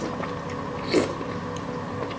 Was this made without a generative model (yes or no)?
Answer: yes